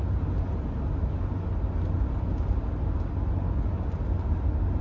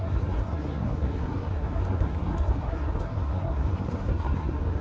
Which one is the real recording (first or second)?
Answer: first